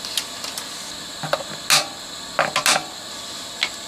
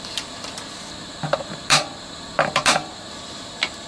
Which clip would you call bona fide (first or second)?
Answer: first